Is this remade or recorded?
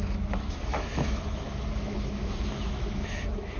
remade